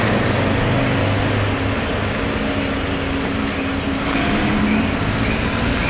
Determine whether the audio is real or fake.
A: real